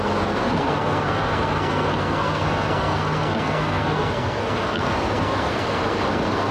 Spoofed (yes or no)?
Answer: yes